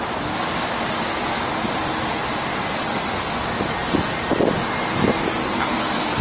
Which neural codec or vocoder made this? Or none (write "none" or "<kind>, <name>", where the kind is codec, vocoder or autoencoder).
none